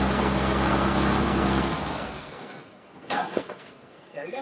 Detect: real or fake fake